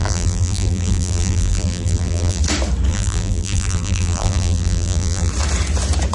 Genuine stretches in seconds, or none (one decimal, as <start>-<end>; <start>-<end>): 2.4-2.9; 5.3-6.1